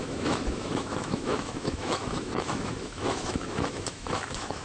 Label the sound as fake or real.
fake